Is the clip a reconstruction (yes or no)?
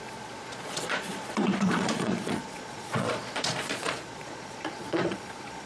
yes